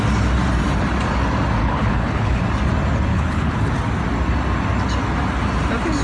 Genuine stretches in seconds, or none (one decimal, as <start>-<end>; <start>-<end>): 0.0-1.6; 2.4-3.1; 3.7-6.0